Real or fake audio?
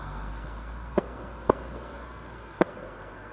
fake